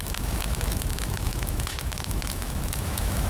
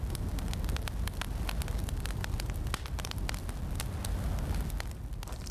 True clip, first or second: second